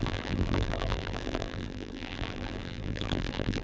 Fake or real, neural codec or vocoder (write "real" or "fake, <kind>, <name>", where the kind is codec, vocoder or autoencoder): fake, vocoder, BigVGAN v2